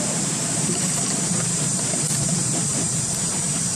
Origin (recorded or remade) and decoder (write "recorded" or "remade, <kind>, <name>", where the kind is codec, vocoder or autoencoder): remade, vocoder, BigVGAN v2